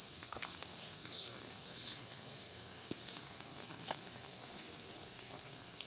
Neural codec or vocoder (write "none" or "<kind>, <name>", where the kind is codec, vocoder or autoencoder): codec, SNAC